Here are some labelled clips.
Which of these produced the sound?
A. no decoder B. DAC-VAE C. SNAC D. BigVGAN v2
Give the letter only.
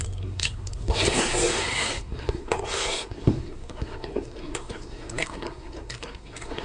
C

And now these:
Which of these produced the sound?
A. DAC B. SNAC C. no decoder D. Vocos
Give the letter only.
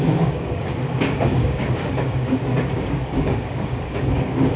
A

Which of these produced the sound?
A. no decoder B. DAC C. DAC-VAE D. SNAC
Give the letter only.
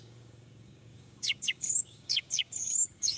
B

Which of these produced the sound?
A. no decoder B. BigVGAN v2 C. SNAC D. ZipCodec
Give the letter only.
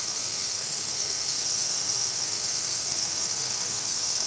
C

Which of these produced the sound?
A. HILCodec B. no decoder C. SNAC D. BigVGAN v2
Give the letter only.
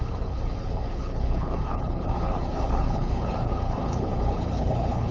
A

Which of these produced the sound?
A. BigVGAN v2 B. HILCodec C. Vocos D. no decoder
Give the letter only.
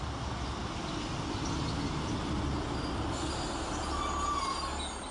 D